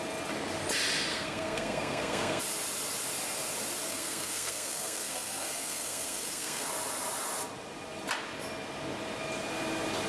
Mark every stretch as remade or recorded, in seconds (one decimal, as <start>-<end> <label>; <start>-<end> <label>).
0.0-1.1 recorded; 1.1-2.4 remade; 2.4-3.8 recorded; 3.8-6.7 remade; 6.7-10.1 recorded